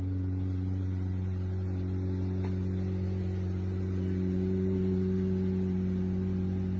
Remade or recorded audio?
recorded